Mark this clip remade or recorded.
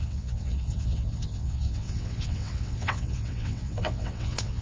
remade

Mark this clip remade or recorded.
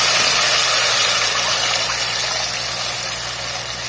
recorded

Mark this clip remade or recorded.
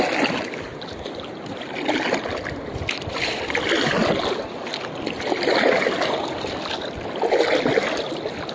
recorded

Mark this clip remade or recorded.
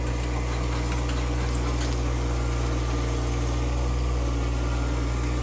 recorded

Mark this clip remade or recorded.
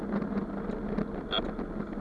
recorded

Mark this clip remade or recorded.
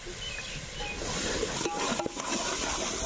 recorded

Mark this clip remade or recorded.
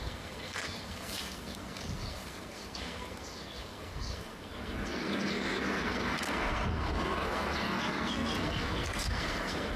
remade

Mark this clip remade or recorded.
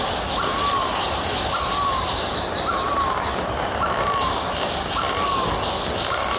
recorded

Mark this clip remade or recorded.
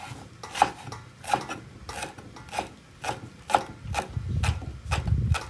recorded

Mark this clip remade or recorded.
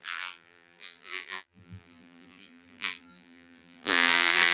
remade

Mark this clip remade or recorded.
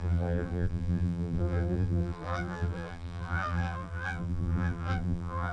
remade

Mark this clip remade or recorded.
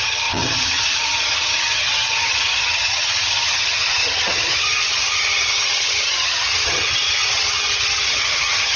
remade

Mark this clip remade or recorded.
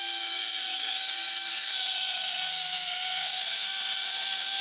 remade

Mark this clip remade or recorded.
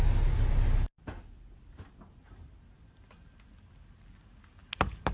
recorded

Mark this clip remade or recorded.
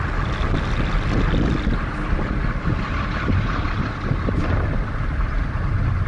recorded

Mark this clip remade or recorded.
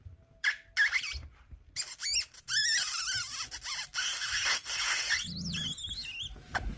recorded